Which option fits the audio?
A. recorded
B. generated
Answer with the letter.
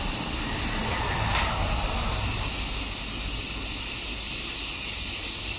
A